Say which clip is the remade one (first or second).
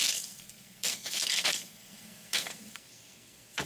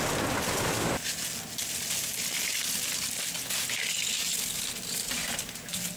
first